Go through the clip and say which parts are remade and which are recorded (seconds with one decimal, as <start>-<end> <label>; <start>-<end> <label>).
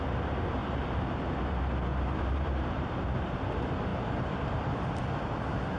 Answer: 0.0-0.6 recorded; 0.6-1.5 remade; 1.5-1.9 recorded; 1.9-3.1 remade; 3.1-3.9 recorded; 3.9-4.9 remade; 4.9-5.8 recorded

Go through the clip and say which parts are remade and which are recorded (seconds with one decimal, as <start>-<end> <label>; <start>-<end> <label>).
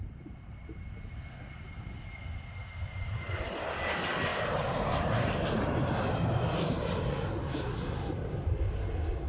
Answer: 0.0-1.0 remade; 1.0-2.6 recorded; 2.6-3.4 remade; 3.4-4.3 recorded; 4.3-6.4 remade; 6.4-9.3 recorded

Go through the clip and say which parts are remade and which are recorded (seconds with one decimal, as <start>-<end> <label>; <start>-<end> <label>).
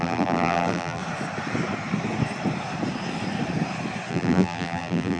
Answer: 0.0-1.0 remade; 1.0-4.1 recorded; 4.1-5.2 remade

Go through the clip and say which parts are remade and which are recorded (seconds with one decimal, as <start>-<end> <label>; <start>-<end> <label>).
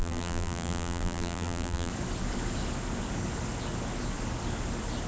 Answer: 0.0-1.9 remade; 1.9-5.1 recorded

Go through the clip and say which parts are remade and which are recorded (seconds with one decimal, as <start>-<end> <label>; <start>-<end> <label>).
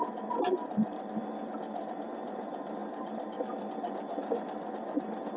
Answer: 0.0-5.4 recorded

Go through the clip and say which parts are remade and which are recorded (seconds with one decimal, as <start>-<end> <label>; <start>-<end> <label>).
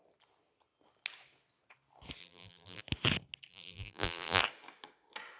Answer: 0.0-2.2 recorded; 2.2-2.8 remade; 2.8-3.5 recorded; 3.5-4.4 remade; 4.4-5.4 recorded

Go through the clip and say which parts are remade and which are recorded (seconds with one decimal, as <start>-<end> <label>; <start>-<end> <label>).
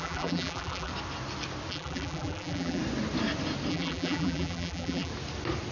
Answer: 0.0-0.9 remade; 0.9-1.7 recorded; 1.7-2.8 remade; 2.8-3.7 recorded; 3.7-5.1 remade; 5.1-5.7 recorded